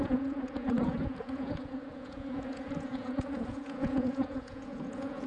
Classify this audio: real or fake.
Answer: fake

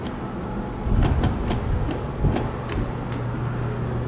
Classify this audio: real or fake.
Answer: real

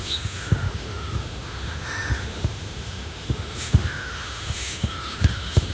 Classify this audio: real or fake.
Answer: fake